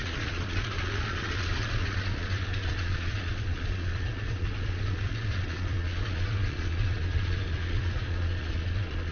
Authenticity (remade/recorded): remade